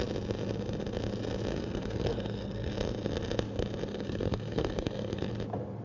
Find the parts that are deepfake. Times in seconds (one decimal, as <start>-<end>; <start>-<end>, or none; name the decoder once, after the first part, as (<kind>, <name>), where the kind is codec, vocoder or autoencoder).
1.5-2.7 (codec, SNAC); 3.9-5.3